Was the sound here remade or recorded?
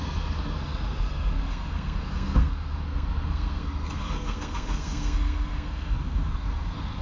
remade